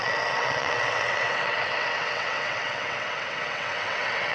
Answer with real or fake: fake